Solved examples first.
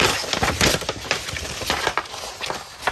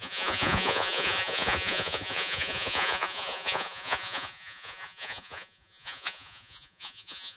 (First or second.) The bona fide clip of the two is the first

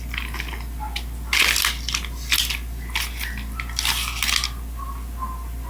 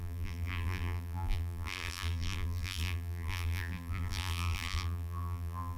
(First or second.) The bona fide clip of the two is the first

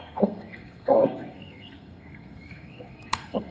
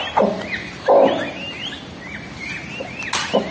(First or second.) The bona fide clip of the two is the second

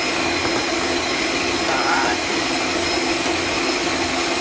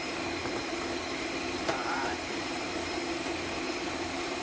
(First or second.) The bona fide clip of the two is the first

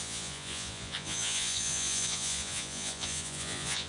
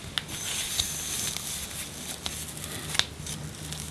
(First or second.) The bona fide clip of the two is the second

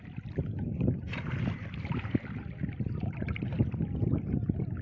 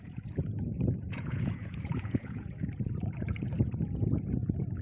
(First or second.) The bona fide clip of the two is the first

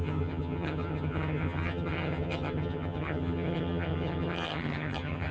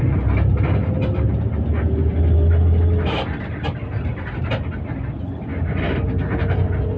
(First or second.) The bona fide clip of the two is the second